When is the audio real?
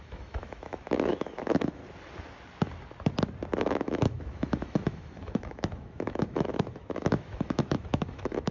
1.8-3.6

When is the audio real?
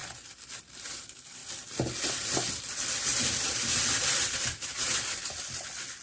0.0-3.1; 5.0-6.0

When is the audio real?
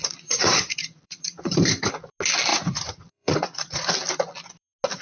1.6-2.5; 3.9-5.0